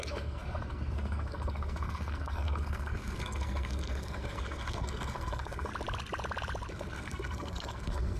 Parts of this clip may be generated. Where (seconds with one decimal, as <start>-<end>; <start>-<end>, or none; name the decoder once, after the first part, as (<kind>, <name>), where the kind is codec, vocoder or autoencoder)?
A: 0.0-5.7 (codec, SNAC); 6.7-8.2